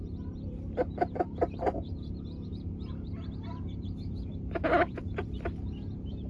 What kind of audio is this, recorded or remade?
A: remade